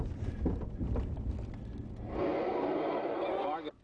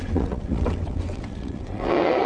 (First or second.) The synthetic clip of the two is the second